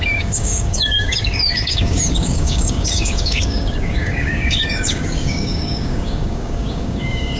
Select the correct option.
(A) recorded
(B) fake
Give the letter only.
B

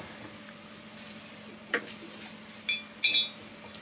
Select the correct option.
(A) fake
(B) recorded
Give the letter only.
B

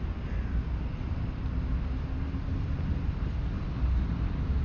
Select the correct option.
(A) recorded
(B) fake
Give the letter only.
A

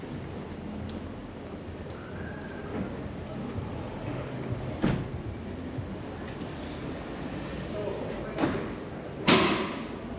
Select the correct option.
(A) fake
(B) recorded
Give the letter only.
B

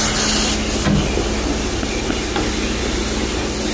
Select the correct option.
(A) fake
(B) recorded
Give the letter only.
B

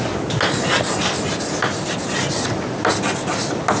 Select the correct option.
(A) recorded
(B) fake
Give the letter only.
A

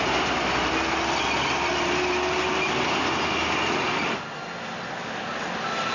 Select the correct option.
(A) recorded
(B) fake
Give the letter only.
A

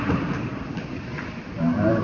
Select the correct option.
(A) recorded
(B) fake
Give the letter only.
B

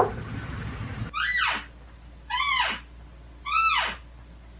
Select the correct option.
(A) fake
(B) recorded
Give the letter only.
B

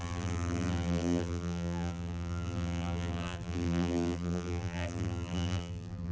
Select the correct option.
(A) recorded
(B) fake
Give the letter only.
B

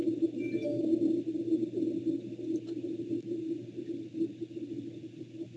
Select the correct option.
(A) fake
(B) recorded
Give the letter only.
B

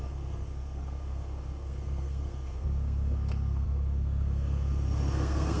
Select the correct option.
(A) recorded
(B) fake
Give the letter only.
B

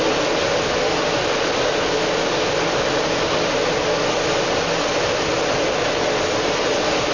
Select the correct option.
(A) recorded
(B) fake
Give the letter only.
A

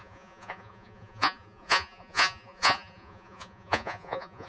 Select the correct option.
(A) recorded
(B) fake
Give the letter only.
B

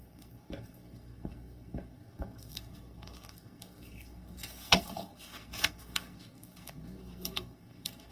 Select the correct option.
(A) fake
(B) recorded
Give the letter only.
A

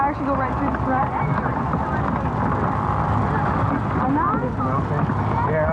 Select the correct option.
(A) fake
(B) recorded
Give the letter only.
B